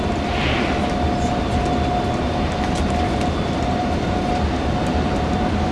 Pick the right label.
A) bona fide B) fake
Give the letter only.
A